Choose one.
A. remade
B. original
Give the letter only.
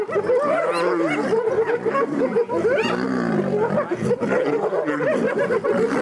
B